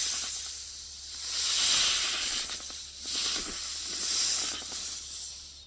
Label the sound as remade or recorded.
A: recorded